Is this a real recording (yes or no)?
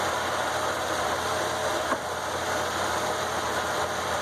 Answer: no